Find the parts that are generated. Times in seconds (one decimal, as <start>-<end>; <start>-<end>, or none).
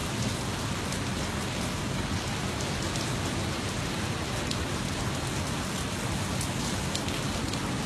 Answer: none